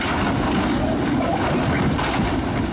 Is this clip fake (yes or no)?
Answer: no